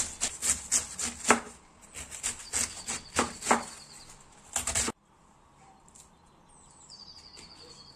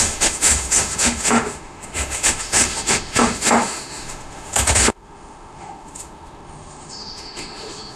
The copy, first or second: second